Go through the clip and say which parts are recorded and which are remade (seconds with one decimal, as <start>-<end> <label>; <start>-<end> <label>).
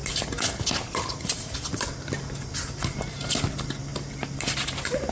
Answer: 0.0-5.1 recorded